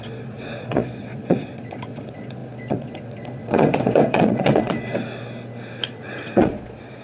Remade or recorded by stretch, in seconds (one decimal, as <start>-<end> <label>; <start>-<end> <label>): 0.0-4.9 remade; 4.9-5.9 recorded; 5.9-7.0 remade